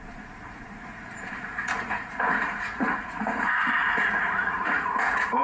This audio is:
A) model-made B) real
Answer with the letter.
A